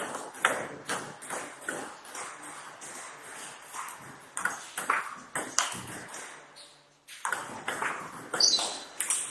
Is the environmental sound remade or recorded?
recorded